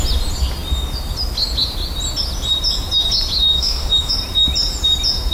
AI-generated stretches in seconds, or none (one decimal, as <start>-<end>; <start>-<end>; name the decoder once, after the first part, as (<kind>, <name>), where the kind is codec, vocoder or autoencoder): 3.5-4.1 (autoencoder, DAC-VAE)